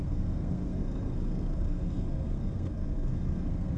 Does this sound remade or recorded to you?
remade